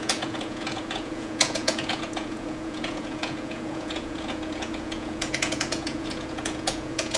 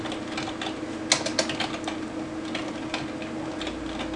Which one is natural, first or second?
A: second